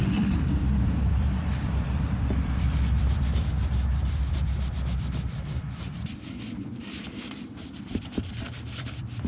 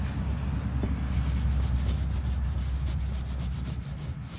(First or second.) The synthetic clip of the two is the first